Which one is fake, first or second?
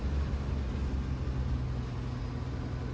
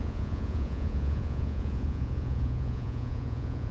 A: second